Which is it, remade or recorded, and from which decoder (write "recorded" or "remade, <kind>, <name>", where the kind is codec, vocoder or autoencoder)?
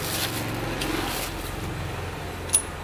recorded